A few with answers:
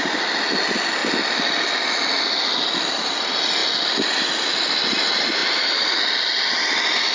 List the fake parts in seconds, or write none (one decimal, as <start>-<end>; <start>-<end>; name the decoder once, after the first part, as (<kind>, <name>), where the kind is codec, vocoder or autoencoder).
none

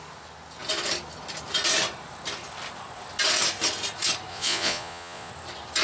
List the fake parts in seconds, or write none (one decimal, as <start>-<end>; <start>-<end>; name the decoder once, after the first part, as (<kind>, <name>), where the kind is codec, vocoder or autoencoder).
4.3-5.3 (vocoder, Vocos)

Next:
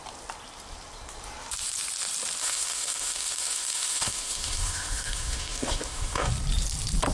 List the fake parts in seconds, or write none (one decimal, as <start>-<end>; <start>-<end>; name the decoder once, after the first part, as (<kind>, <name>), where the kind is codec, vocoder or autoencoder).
2.4-6.3 (autoencoder, DAC-VAE)

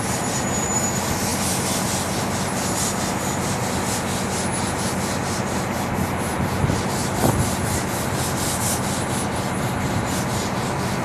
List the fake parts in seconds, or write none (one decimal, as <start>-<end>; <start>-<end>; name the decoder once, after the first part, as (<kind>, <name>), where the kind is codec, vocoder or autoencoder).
none